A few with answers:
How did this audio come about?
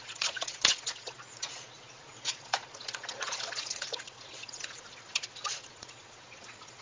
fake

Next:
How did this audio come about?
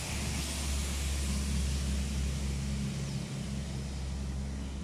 real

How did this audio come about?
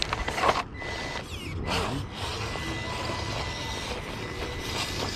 real